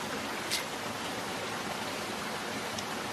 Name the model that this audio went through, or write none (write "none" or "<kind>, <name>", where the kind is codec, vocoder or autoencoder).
none